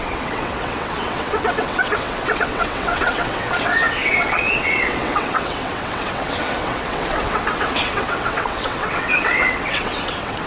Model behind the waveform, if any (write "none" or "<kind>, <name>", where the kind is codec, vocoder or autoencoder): vocoder, WaveNeXt